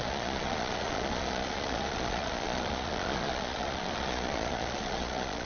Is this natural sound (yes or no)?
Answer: no